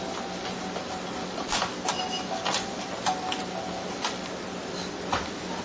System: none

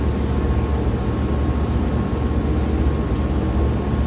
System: none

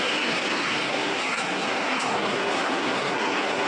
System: codec, SNAC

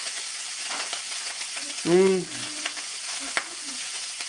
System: vocoder, Vocos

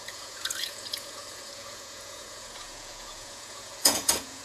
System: vocoder, Vocos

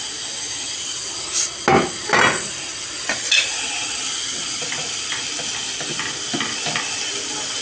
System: none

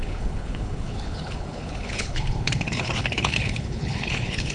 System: codec, HILCodec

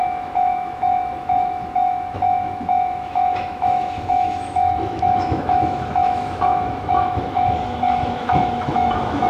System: autoencoder, DAC-VAE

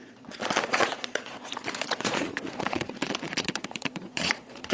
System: vocoder, Vocos